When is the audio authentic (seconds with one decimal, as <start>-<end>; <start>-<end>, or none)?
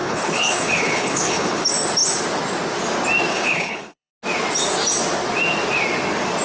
1.6-3.3; 4.1-6.4